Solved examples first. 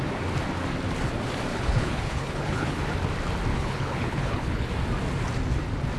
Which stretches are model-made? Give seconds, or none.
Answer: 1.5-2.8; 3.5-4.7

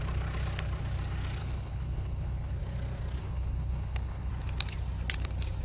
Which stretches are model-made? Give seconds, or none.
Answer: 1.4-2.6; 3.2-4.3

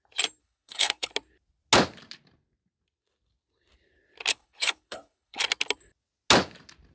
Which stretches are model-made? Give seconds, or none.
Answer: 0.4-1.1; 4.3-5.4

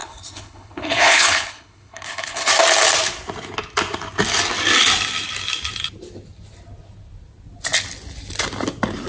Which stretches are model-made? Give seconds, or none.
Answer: 0.0-2.5